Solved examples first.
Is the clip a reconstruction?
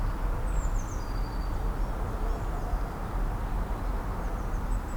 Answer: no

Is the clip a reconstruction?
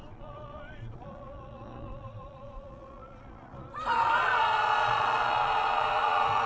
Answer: yes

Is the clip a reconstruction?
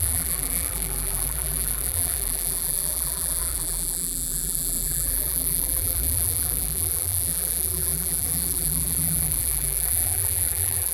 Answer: yes